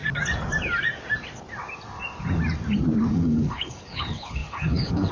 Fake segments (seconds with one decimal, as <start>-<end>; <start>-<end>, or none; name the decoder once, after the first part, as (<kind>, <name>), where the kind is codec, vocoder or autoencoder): 3.1-5.1 (codec, HILCodec)